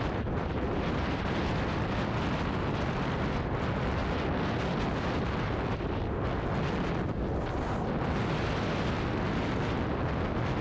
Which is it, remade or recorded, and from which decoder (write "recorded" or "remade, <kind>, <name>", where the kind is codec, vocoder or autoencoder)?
recorded